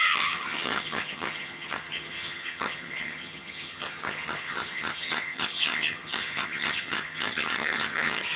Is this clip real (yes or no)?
no